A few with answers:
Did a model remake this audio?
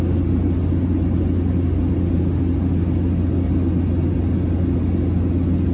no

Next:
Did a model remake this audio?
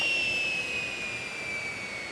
no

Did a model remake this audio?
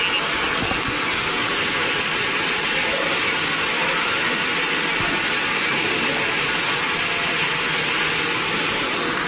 no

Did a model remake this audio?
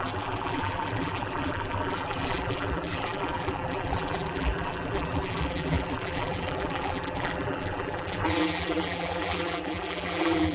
yes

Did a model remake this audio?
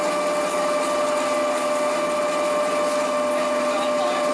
no